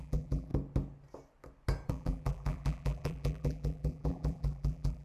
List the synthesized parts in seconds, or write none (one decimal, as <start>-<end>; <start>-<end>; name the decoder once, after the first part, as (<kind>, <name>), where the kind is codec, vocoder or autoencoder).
0.0-0.5 (vocoder, BigVGAN v2); 1.9-5.0